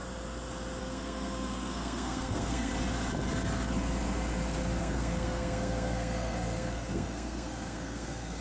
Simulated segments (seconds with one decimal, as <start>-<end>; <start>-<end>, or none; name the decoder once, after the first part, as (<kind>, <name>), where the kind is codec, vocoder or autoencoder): 0.8-2.7 (codec, SNAC); 4.8-8.4